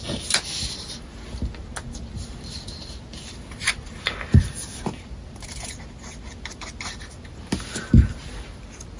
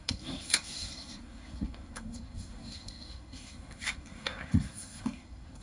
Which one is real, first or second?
first